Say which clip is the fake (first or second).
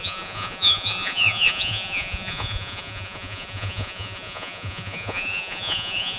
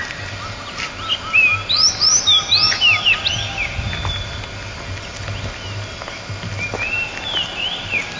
first